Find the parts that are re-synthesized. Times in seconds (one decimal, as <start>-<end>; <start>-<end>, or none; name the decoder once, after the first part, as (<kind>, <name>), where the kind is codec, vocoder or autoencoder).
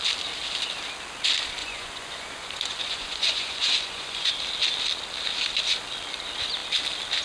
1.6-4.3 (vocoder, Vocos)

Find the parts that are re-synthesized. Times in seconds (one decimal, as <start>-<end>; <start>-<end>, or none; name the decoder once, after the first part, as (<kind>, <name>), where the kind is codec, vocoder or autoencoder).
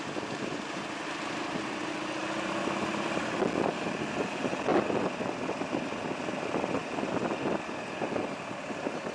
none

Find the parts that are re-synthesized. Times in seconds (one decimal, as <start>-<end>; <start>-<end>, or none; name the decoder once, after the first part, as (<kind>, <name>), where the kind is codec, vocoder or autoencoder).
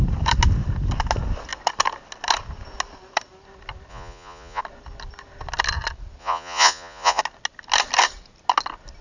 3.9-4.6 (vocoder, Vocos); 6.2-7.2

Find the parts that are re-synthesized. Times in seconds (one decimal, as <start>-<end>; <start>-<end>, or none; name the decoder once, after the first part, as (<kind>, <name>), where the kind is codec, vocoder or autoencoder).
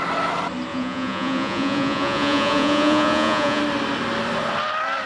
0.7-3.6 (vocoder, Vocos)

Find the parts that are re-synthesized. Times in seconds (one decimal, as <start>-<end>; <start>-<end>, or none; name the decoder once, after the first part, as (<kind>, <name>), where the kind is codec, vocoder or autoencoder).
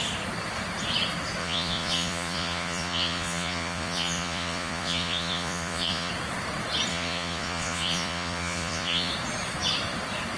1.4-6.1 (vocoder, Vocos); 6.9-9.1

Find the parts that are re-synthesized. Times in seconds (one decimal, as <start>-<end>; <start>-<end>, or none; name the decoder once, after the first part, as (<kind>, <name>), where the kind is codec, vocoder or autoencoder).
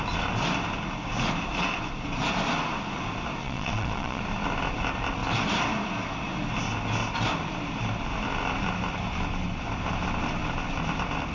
3.4-4.2 (vocoder, Vocos)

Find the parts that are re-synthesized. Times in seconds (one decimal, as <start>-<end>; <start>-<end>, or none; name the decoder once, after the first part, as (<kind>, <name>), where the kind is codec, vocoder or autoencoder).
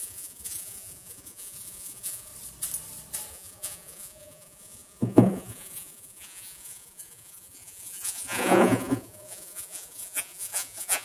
0.0-2.3 (vocoder, Vocos); 3.3-11.0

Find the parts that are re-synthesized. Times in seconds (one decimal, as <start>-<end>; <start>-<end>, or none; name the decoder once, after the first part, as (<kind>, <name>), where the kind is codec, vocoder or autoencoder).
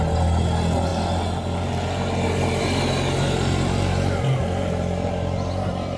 none